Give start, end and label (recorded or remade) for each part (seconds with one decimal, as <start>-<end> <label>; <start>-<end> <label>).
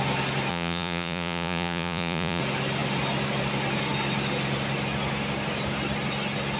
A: 0.0-0.5 recorded; 0.5-2.4 remade; 2.4-6.6 recorded